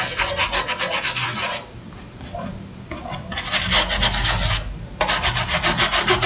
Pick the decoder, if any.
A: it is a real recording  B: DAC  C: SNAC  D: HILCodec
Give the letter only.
A